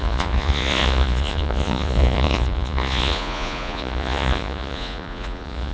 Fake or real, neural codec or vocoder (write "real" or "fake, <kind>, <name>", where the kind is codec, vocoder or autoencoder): fake, vocoder, Vocos